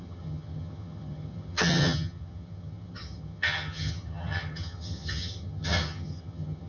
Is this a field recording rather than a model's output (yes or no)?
no